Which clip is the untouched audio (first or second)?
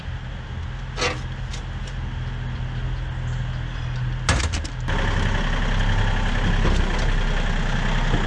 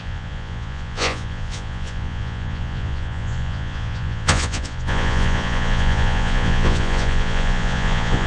first